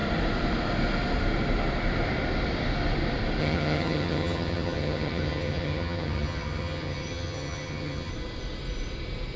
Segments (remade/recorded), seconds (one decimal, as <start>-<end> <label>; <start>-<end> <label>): 0.0-3.4 recorded; 3.4-8.1 remade; 8.1-9.4 recorded